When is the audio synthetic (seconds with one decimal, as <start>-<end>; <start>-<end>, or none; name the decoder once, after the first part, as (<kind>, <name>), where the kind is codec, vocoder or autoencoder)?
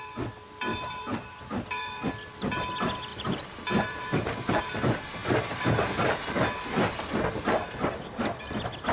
0.7-2.1 (vocoder, BigVGAN v2); 3.1-4.6; 5.2-6.5; 7.4-8.5